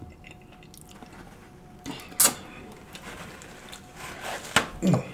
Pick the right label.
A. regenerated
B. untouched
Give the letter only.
B